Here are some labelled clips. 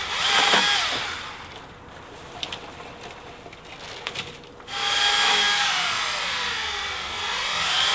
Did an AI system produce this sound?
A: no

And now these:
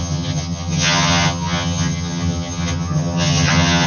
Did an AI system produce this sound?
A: yes